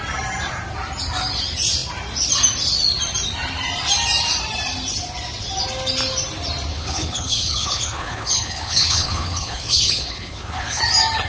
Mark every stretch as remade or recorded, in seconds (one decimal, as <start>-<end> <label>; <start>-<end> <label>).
0.0-6.7 recorded; 6.7-10.8 remade; 10.8-11.3 recorded